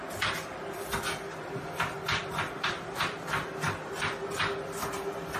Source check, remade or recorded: recorded